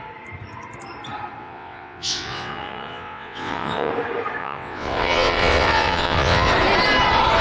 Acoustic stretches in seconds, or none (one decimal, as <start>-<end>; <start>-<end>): 0.0-1.4; 3.9-4.4; 6.5-7.4